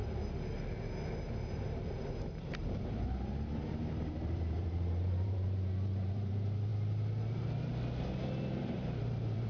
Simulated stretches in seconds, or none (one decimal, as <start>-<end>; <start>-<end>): 1.5-6.7; 8.6-9.5